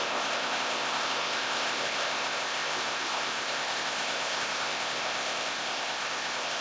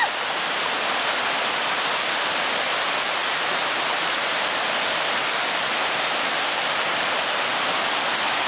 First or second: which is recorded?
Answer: second